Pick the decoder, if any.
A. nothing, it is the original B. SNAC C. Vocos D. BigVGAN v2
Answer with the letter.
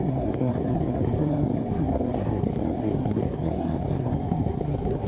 B